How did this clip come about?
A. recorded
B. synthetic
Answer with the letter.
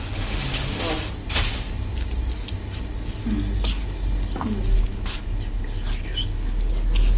A